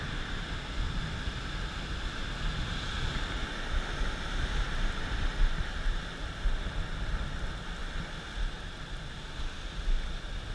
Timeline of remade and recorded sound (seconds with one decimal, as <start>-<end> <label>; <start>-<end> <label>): 0.0-10.5 recorded